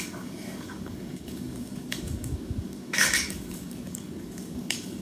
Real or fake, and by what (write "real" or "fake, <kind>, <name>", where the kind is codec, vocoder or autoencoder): fake, codec, DAC